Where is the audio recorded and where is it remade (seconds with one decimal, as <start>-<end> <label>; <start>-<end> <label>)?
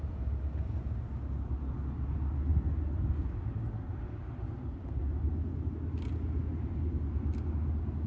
0.0-8.1 recorded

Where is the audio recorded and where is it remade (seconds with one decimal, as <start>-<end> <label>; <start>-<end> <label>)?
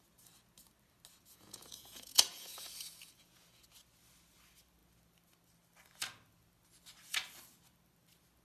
0.0-1.3 recorded; 1.3-3.6 remade; 3.6-8.4 recorded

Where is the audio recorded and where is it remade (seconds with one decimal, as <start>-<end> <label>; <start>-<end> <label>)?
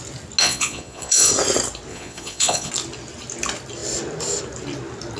0.0-0.4 recorded; 0.4-1.3 remade; 1.3-1.9 recorded; 1.9-2.7 remade; 2.7-5.2 recorded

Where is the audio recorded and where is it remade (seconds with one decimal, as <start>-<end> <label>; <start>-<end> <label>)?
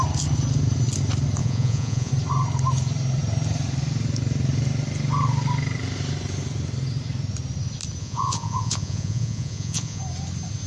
0.0-1.4 recorded; 1.4-2.1 remade; 2.1-8.0 recorded; 8.0-10.0 remade; 10.0-10.7 recorded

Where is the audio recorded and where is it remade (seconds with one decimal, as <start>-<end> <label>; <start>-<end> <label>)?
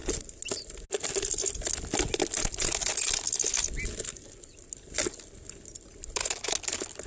0.0-7.1 recorded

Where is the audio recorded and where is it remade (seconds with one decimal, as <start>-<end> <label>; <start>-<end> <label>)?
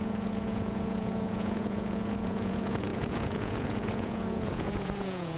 0.0-5.4 remade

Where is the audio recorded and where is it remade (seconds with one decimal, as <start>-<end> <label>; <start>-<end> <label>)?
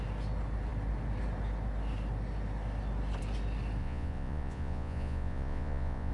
0.0-3.8 recorded; 3.8-6.1 remade